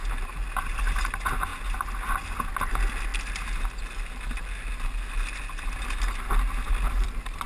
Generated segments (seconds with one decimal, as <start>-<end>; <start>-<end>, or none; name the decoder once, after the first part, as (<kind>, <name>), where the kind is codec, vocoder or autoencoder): none